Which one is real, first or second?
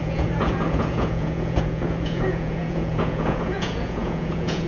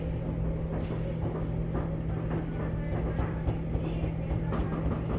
second